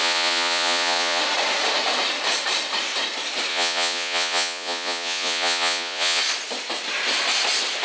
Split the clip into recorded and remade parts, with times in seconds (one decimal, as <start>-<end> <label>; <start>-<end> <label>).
0.0-1.2 remade; 1.2-3.5 recorded; 3.5-6.2 remade; 6.2-7.8 recorded